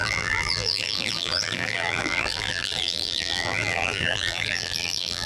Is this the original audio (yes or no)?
no